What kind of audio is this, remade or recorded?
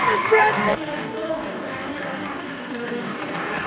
remade